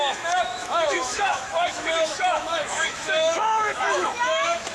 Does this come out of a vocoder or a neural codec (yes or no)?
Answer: yes